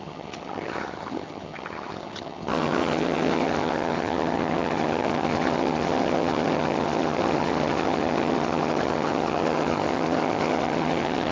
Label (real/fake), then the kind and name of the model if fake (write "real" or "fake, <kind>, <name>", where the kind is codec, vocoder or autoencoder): fake, vocoder, HiFi-GAN